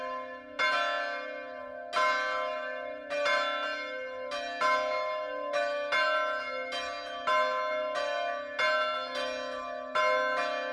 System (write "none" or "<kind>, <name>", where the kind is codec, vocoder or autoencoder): none